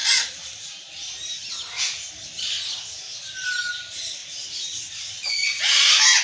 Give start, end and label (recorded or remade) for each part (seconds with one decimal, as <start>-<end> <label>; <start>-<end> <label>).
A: 0.0-6.2 recorded